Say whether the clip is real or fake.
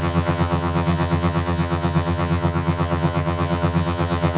fake